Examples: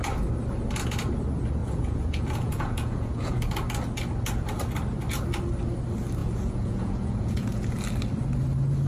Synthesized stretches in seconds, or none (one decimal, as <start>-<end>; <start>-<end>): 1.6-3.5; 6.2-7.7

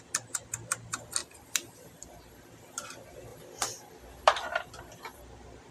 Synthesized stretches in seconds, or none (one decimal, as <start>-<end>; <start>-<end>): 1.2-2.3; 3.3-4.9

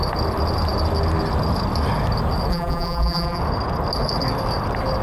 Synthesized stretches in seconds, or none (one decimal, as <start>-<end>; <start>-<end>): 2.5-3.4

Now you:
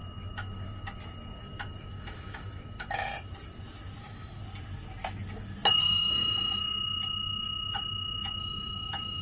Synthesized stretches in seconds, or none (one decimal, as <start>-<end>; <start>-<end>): 1.8-3.1; 4.0-4.4; 5.8-6.6; 8.4-9.2

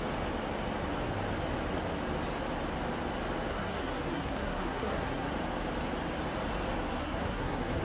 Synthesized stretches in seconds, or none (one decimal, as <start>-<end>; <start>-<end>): 3.5-5.3; 6.9-7.8

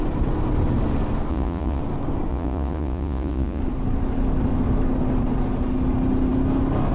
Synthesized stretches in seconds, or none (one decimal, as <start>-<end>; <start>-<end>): 1.3-1.8; 2.3-3.6